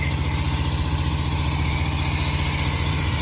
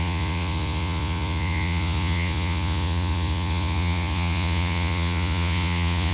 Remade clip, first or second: second